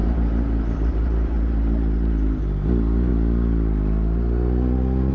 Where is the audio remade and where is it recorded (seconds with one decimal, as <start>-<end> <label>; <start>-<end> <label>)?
0.0-3.1 remade; 3.1-5.1 recorded